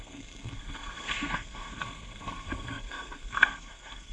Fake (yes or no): yes